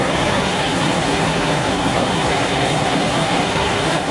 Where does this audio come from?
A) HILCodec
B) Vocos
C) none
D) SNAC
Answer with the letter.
D